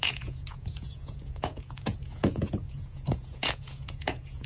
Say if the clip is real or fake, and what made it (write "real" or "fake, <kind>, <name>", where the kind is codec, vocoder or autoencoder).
fake, vocoder, Vocos